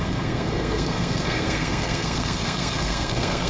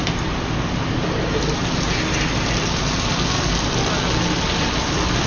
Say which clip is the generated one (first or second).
first